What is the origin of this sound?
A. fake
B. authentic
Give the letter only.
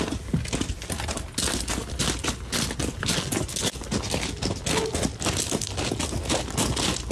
B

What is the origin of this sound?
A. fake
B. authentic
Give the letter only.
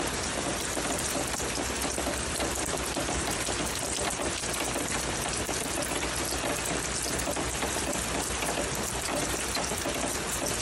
A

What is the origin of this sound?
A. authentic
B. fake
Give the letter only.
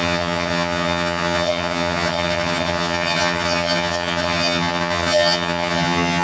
B